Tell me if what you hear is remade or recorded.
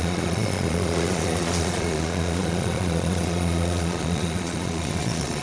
remade